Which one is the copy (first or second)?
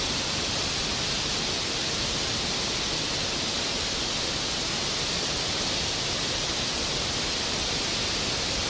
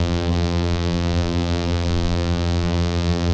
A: second